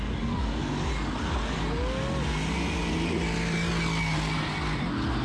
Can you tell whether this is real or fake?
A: real